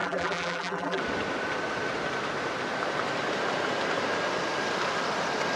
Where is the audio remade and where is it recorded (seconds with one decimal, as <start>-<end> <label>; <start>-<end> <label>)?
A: 0.0-1.0 remade; 1.0-5.6 recorded